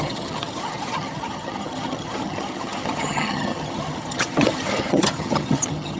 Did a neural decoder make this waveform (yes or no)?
yes